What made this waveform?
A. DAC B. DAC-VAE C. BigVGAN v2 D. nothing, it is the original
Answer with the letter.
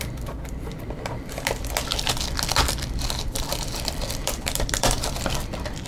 C